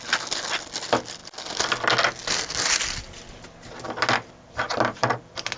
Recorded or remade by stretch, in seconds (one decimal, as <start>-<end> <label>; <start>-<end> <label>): 0.0-5.6 recorded